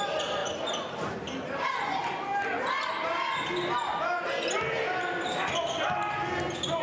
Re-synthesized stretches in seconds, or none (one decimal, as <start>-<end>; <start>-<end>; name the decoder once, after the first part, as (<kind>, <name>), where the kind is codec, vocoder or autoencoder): none